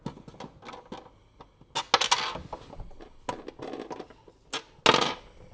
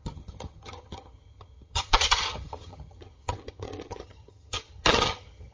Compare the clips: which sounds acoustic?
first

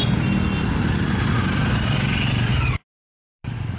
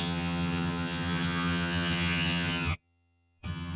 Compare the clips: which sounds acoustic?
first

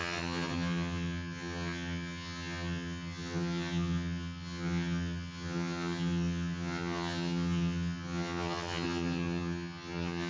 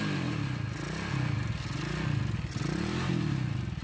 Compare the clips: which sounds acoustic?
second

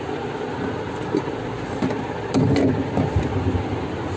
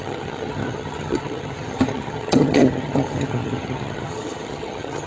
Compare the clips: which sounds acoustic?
first